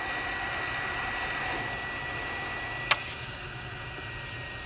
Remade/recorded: recorded